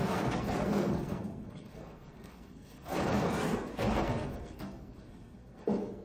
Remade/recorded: remade